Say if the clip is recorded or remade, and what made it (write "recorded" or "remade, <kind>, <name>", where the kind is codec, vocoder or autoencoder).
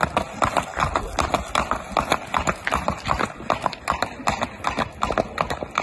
recorded